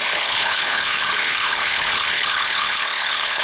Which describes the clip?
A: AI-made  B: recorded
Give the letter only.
A